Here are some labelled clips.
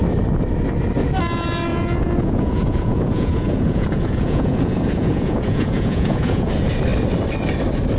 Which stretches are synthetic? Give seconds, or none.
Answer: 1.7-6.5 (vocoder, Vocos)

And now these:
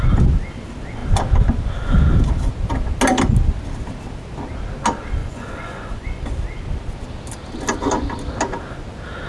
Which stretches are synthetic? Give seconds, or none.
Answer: 5.2-6.2 (vocoder, Vocos)